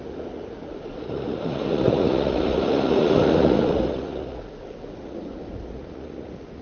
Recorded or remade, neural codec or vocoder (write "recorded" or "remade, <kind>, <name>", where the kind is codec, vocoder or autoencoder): remade, vocoder, Vocos